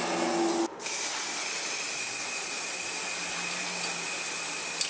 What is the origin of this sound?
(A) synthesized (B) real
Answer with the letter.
B